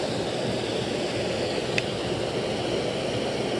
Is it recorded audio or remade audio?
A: recorded